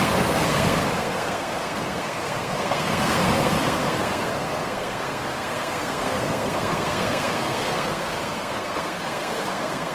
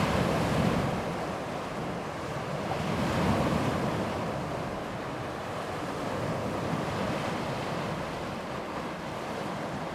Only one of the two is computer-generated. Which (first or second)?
first